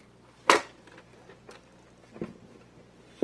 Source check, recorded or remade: recorded